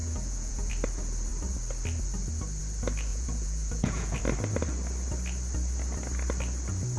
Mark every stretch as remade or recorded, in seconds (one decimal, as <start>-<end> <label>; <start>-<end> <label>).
0.0-0.7 remade; 0.7-3.1 recorded; 3.1-4.2 remade; 4.2-7.0 recorded